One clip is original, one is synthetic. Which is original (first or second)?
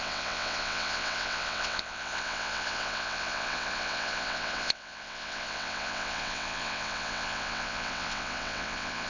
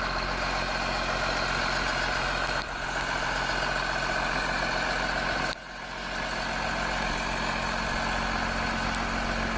second